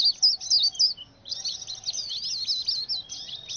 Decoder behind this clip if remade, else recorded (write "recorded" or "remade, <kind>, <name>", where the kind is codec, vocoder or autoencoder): recorded